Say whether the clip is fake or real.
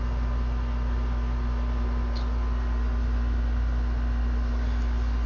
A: real